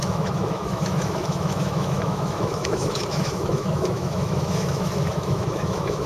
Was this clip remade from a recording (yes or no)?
yes